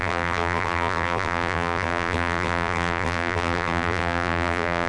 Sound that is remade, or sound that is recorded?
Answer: remade